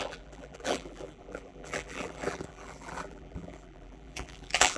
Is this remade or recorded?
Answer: remade